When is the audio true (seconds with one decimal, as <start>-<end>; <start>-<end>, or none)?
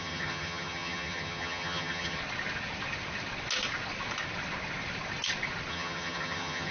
2.2-5.7